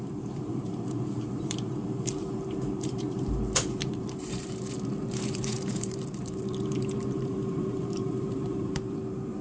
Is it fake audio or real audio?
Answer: fake